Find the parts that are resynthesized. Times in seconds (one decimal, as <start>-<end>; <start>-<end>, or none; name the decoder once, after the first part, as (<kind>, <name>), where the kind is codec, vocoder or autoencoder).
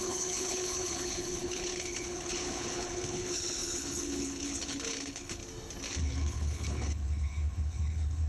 0.0-5.4 (codec, HILCodec); 6.0-8.3